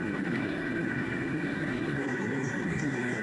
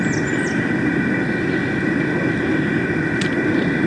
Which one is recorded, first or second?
second